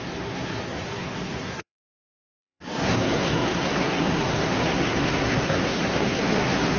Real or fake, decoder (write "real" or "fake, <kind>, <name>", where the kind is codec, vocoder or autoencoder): fake, codec, SNAC